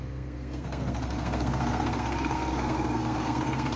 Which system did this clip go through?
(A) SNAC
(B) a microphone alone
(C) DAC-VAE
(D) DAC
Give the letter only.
A